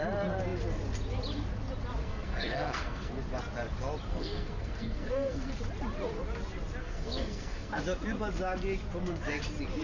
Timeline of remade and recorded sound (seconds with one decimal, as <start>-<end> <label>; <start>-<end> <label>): 0.0-2.0 recorded; 2.0-3.1 remade; 3.1-4.1 recorded; 4.1-5.5 remade; 5.5-6.8 recorded; 6.8-7.8 remade; 7.8-9.8 recorded